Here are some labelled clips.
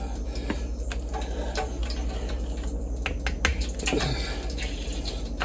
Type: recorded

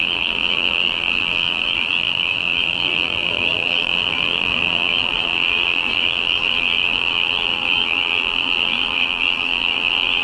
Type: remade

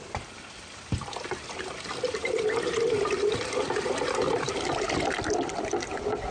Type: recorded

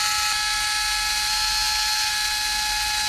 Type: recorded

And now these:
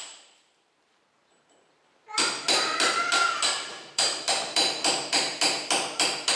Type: remade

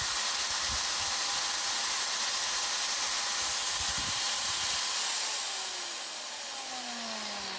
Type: recorded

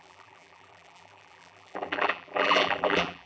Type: remade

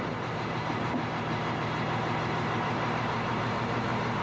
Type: remade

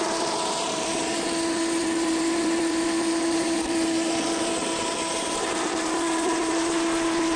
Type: remade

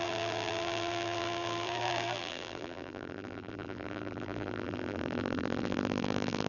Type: remade